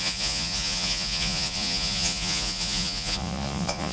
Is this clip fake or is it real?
fake